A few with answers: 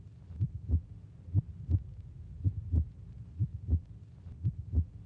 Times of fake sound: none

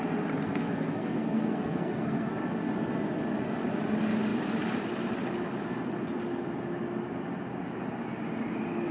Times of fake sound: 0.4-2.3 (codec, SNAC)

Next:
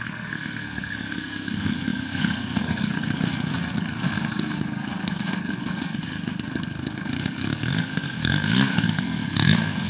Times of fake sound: 0.0-9.9 (codec, SNAC)

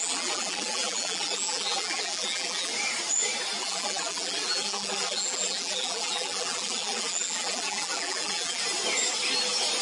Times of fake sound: 0.0-2.7 (vocoder, BigVGAN v2); 3.6-8.6

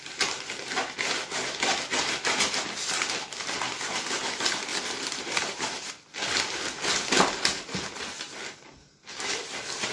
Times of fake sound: 4.7-5.9 (vocoder, BigVGAN v2)